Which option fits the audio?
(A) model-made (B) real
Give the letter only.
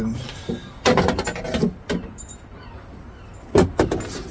B